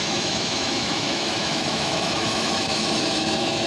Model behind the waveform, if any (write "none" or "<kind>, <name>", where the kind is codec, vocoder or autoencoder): autoencoder, DAC-VAE